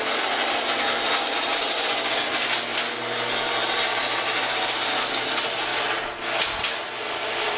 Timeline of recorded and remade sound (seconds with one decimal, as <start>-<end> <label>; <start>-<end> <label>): 0.0-7.6 recorded